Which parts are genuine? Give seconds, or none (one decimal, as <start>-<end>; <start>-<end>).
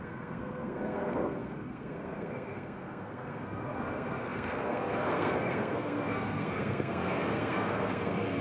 none